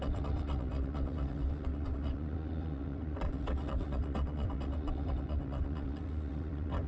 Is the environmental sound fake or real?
fake